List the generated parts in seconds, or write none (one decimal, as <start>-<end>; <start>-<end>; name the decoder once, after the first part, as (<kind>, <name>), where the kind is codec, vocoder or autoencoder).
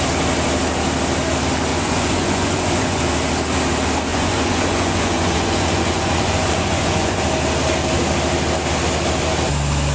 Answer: 1.7-3.0 (vocoder, Vocos); 4.1-7.2